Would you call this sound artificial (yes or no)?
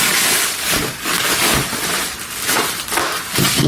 no